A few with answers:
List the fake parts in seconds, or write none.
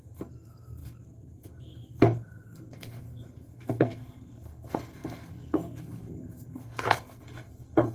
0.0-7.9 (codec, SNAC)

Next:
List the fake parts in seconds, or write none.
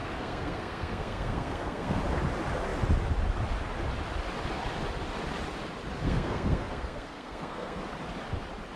0.0-2.0 (codec, SNAC); 6.0-7.8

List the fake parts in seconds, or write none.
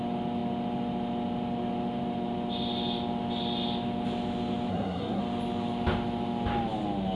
4.7-5.2 (codec, SNAC)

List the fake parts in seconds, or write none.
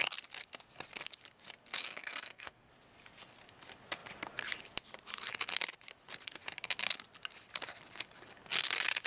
1.8-2.7 (codec, SNAC)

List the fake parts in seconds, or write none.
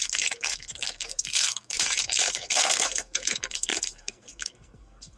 0.0-5.2 (codec, SNAC)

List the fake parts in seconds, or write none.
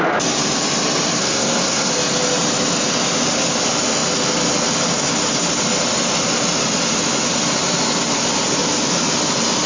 1.2-1.9 (codec, SNAC)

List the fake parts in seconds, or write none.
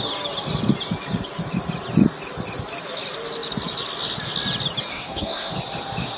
4.9-5.5 (codec, SNAC)